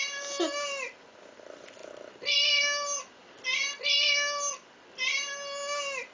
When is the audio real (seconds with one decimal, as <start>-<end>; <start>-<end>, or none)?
0.0-6.1